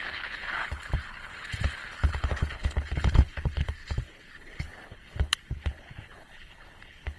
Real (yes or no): no